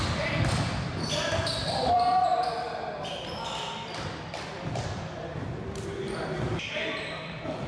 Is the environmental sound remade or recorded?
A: remade